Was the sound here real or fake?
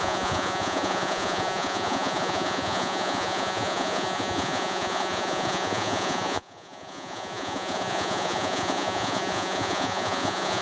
fake